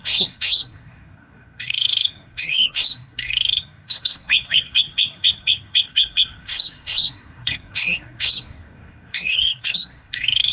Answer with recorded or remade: remade